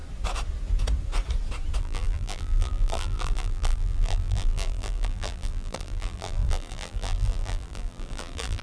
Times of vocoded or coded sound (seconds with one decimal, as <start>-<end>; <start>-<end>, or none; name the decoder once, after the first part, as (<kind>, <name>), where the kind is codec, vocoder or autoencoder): 1.8-8.6 (vocoder, BigVGAN v2)